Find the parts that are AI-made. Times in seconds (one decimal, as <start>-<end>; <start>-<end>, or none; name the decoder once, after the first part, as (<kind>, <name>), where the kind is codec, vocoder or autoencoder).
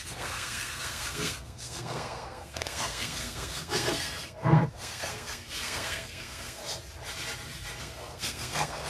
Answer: 0.0-6.6 (codec, SNAC); 7.8-8.9